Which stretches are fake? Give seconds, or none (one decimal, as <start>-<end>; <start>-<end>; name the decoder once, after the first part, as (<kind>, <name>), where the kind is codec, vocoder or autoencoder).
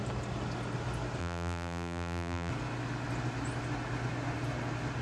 1.2-2.5 (vocoder, BigVGAN v2)